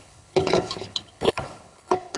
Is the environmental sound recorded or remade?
remade